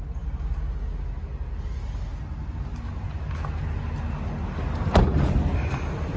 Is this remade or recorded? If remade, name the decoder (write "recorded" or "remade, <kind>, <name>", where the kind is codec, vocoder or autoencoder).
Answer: recorded